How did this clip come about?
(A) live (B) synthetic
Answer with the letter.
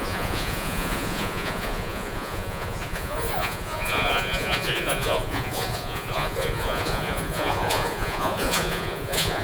B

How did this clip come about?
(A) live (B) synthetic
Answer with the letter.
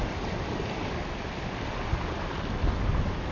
A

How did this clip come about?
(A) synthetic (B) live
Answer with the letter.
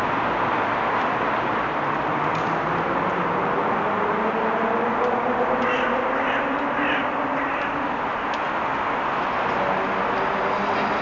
B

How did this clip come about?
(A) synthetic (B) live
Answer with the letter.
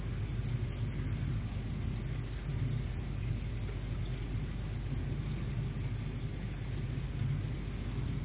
B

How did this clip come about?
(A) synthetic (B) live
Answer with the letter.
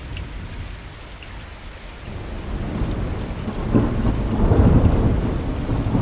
B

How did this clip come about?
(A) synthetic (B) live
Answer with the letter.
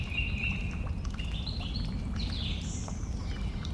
B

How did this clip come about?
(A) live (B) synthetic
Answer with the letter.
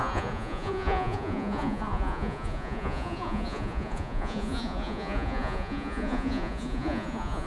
B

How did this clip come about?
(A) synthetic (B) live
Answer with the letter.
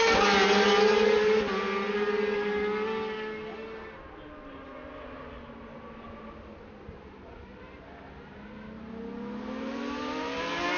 B